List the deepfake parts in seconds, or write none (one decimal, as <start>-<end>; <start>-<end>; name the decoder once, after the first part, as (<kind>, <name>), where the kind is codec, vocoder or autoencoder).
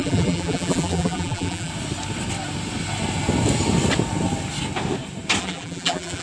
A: 0.0-1.7 (vocoder, BigVGAN v2); 5.4-6.2